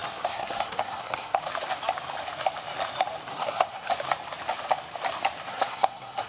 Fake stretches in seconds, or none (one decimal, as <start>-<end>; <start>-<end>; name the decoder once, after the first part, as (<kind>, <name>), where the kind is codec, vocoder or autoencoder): 0.0-1.4 (codec, SNAC); 3.3-3.9; 5.5-6.3